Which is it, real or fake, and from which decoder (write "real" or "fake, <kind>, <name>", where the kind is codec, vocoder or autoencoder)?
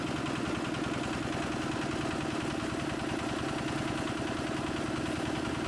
real